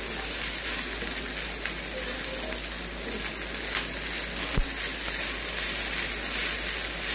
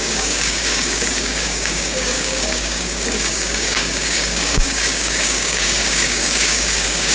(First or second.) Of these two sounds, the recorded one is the first